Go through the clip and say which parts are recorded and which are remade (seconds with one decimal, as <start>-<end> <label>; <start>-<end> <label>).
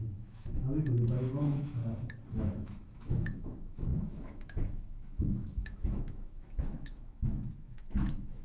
0.0-1.8 remade; 1.8-2.3 recorded; 2.3-8.4 remade